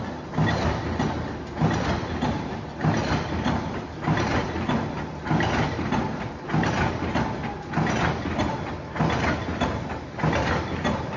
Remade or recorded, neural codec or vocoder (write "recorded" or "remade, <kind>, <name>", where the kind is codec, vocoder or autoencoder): recorded